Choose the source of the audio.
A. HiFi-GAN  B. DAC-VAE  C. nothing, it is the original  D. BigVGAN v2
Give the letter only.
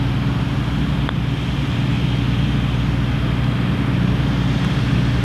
C